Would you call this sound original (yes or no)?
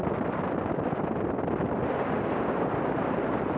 yes